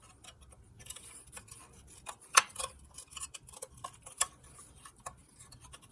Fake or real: fake